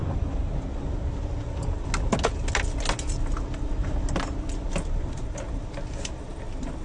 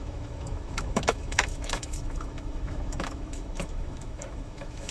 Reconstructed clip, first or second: second